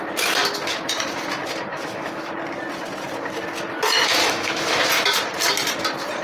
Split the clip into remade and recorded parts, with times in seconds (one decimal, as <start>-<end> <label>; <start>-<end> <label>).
0.0-1.7 recorded; 1.7-2.3 remade; 2.3-4.2 recorded; 4.2-4.8 remade; 4.8-6.2 recorded